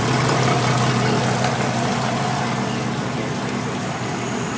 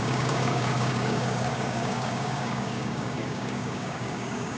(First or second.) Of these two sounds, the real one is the first